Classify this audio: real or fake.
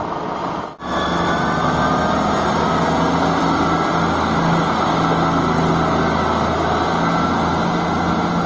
real